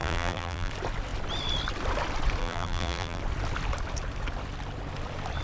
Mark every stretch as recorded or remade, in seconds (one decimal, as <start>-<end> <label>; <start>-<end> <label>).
0.0-0.7 remade; 0.7-2.4 recorded; 2.4-3.2 remade; 3.2-5.4 recorded